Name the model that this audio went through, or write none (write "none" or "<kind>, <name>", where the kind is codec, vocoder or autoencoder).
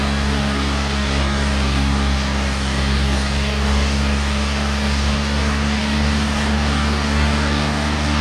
codec, DAC